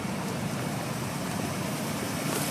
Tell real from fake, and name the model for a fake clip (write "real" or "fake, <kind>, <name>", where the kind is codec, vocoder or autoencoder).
fake, vocoder, BigVGAN v2